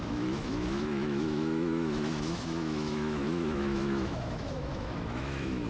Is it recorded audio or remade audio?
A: remade